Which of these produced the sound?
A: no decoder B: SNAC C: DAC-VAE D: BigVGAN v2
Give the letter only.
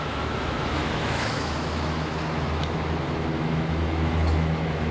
C